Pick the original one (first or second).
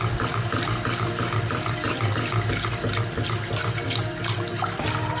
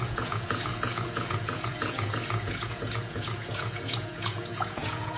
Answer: first